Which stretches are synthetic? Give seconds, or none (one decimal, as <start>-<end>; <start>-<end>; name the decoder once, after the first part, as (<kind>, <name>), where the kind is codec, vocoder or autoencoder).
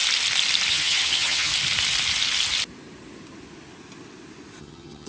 0.7-1.5 (vocoder, HiFi-GAN); 4.6-5.1